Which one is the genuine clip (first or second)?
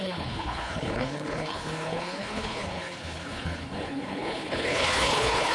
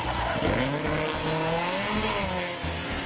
second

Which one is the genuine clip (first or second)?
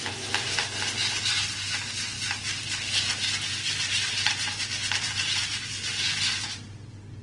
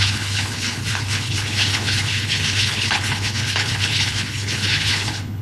first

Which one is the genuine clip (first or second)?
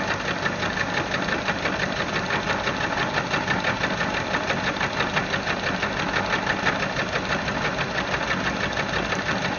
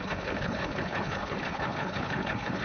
first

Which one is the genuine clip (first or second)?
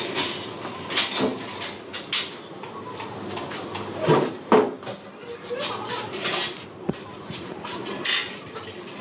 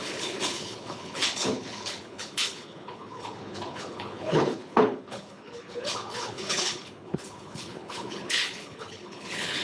first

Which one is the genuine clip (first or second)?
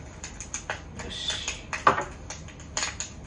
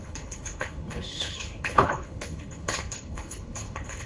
first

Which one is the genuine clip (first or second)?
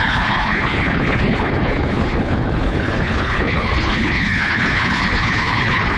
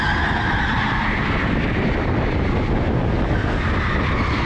second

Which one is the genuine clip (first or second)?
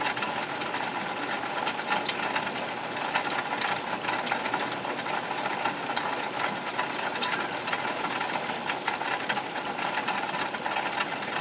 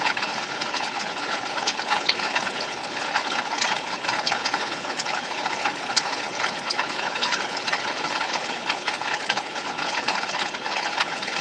first